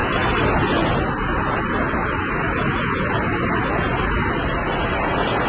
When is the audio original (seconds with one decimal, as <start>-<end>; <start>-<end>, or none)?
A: 0.0-5.5